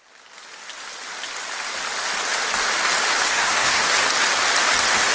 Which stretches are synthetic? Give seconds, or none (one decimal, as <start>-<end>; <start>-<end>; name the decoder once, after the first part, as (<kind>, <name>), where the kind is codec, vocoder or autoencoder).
3.3-3.9 (codec, SNAC)

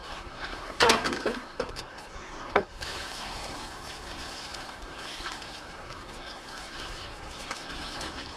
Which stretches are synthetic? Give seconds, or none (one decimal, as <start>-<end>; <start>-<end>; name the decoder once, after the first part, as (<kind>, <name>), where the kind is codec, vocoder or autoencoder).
0.0-8.4 (codec, SNAC)

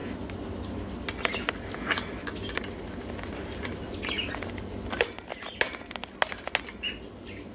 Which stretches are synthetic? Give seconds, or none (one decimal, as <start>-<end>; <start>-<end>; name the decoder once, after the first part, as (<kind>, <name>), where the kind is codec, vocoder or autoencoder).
5.3-6.0 (vocoder, BigVGAN v2)

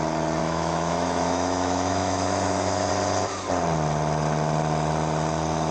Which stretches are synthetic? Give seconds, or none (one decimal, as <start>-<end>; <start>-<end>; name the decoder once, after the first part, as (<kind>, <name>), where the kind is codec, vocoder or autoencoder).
0.4-2.9 (autoencoder, DAC-VAE)

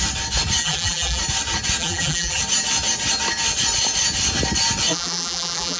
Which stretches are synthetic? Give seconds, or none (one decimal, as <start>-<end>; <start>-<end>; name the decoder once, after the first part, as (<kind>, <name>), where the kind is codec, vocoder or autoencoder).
0.6-1.2 (vocoder, BigVGAN v2); 1.8-2.4; 4.9-5.8

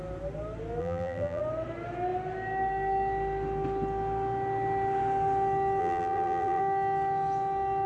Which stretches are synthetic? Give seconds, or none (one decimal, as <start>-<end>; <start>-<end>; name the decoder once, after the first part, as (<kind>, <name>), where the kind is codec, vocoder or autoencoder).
0.8-1.4 (vocoder, BigVGAN v2); 5.8-6.6